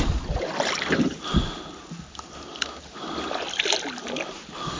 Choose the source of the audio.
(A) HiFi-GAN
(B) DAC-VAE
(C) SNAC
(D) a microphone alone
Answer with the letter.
D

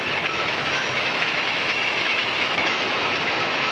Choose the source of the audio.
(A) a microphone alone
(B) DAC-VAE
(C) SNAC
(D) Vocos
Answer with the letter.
B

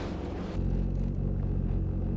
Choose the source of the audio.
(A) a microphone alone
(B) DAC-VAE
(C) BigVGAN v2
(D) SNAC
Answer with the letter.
A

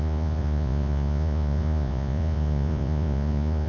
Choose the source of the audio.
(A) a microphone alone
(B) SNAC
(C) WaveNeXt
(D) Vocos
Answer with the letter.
D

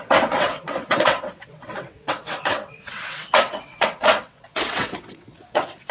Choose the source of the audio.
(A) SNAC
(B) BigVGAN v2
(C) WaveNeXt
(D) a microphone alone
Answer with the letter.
C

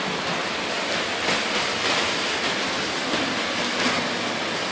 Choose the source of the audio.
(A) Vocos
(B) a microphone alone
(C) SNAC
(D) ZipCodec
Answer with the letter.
B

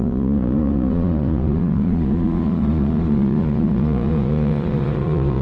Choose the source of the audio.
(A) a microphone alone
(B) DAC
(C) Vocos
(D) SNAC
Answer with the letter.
C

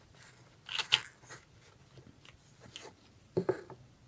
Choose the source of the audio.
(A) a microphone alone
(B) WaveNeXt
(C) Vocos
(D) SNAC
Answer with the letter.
A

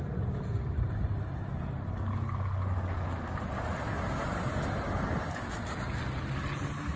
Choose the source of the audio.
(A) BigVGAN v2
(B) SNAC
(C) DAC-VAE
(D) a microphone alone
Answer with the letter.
D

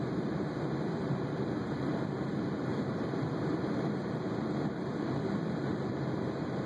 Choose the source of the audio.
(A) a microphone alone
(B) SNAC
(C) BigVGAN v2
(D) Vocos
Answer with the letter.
C